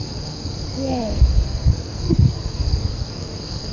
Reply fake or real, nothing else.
fake